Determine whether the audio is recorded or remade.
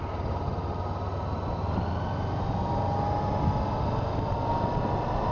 recorded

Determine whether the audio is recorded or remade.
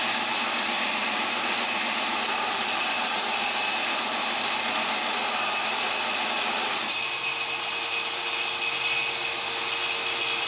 recorded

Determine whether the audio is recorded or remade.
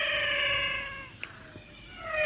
recorded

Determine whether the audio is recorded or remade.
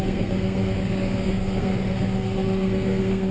remade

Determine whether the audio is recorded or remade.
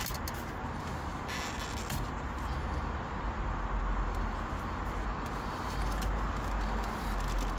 recorded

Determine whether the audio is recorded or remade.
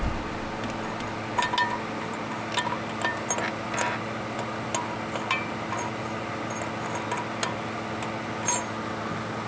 recorded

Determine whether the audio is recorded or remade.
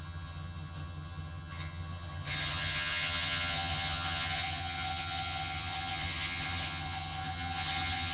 remade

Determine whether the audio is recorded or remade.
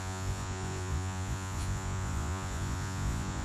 remade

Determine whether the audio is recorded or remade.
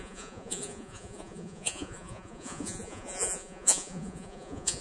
remade